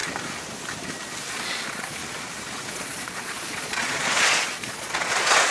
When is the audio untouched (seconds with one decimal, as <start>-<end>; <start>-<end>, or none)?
0.0-1.3; 2.0-2.7